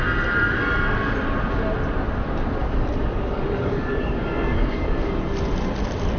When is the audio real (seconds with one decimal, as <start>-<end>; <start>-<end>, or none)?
0.0-2.6; 5.1-6.2